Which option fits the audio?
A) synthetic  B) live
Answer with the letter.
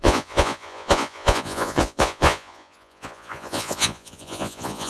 A